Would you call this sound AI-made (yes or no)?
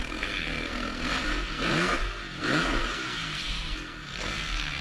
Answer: yes